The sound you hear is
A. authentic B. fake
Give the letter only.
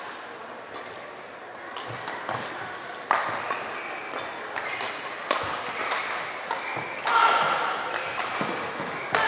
A